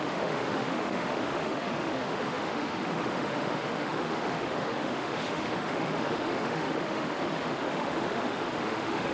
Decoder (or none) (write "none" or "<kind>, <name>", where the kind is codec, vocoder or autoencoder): autoencoder, DAC-VAE